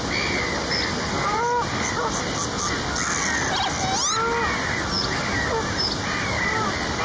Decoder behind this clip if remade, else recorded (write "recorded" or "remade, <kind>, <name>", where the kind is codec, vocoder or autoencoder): recorded